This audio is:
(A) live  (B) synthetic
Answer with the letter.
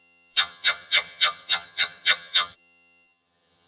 B